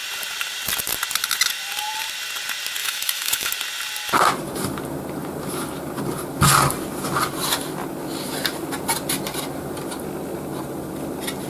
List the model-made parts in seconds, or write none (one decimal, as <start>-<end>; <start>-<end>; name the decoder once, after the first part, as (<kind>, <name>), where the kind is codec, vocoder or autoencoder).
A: 2.8-3.5 (autoencoder, DAC-VAE)